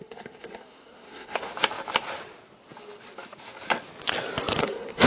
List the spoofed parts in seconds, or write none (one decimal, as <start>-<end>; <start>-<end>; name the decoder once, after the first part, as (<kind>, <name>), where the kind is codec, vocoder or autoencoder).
0.0-1.5 (codec, SNAC); 4.6-5.1